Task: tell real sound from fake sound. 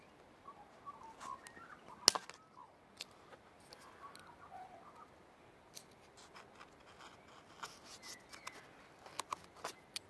real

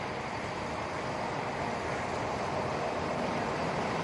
real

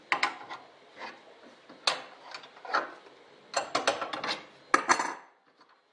real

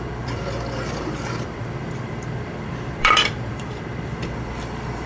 fake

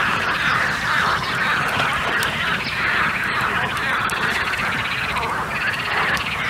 fake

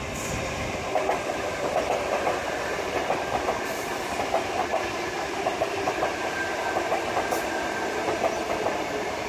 real